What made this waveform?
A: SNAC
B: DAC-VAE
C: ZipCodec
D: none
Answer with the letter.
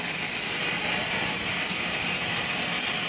D